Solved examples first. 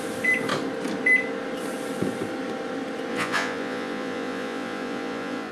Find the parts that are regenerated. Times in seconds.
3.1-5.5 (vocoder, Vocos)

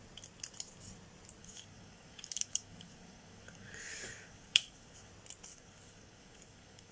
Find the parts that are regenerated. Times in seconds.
1.4-5.1 (codec, DAC); 5.5-6.9

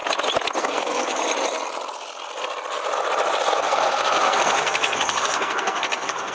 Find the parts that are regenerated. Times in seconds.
0.6-1.2 (codec, SNAC); 3.5-6.3